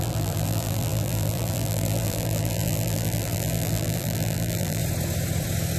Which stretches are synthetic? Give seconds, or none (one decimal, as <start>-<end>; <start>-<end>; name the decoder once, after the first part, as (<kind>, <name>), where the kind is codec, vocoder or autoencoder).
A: 0.0-4.8 (vocoder, BigVGAN v2)